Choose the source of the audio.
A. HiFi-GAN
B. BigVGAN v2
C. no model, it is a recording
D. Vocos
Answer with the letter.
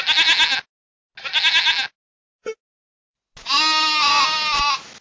C